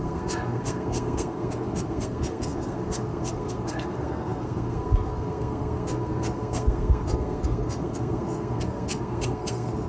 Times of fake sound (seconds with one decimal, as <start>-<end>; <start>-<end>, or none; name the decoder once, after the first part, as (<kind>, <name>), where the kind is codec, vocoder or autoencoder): 0.0-9.9 (codec, SNAC)